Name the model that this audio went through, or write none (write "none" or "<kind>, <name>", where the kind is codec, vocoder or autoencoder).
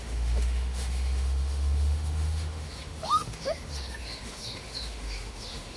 autoencoder, DAC-VAE